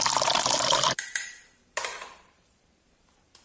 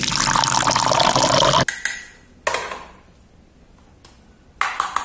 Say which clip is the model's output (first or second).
first